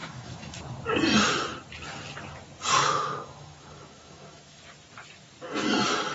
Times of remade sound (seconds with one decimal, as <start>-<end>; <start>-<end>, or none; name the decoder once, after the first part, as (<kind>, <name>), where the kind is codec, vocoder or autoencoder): 0.0-0.6 (autoencoder, DAC-VAE); 2.8-4.6